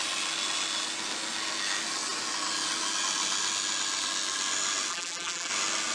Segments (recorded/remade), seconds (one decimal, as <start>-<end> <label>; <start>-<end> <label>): 0.0-4.9 recorded; 4.9-5.5 remade; 5.5-5.9 recorded

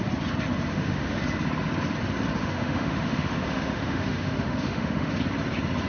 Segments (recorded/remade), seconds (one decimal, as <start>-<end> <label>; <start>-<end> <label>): 0.0-0.7 recorded; 0.7-1.2 remade; 1.2-2.4 recorded; 2.4-5.1 remade; 5.1-5.9 recorded

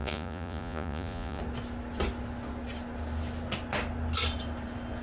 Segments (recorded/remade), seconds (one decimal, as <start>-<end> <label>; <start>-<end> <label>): 0.0-1.4 remade; 1.4-5.0 recorded

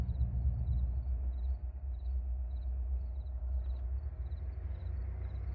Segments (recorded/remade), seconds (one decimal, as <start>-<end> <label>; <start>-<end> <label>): 0.0-5.5 recorded

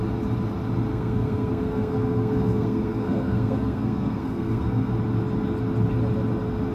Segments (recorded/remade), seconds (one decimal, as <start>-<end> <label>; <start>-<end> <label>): 0.0-0.9 recorded; 0.9-4.9 remade; 4.9-6.7 recorded

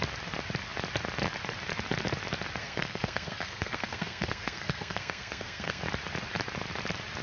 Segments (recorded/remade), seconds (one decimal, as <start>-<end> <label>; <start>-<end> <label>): 0.0-2.6 recorded; 2.6-5.8 remade; 5.8-7.2 recorded

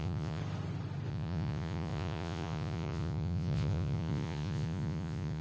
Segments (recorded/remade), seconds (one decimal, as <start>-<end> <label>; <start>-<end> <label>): 0.0-0.4 remade; 0.4-1.1 recorded; 1.1-5.4 remade

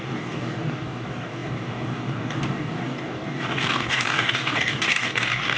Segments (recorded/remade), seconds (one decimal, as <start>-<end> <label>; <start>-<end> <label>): 0.0-5.6 remade